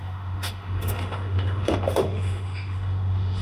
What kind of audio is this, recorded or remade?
remade